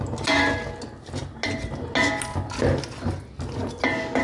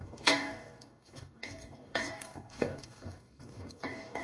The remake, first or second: second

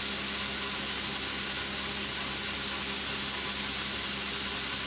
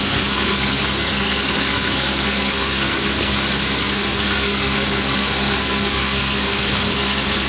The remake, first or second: second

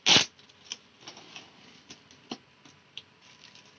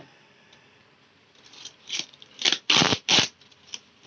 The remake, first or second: second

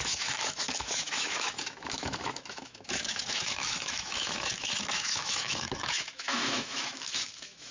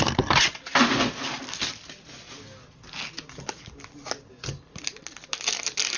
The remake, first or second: first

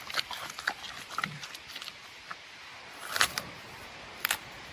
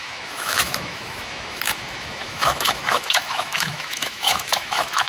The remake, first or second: second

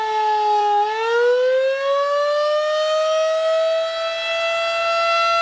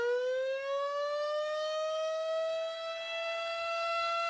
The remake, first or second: second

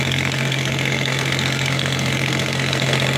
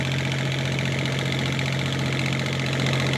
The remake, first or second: first